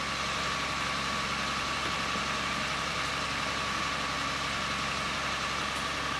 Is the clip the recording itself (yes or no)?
yes